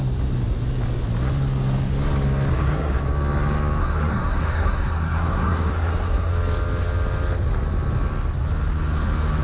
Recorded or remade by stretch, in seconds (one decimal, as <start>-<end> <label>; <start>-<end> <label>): 0.0-2.5 recorded; 2.5-3.0 remade; 3.0-3.8 recorded; 3.8-6.3 remade; 6.3-9.4 recorded